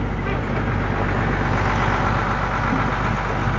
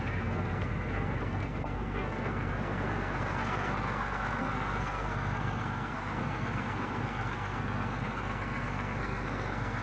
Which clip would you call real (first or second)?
first